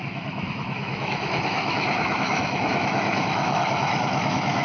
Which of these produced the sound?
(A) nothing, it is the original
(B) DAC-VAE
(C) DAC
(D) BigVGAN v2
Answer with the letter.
B